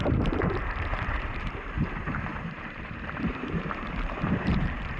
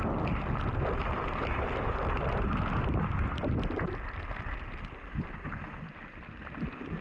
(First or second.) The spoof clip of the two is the first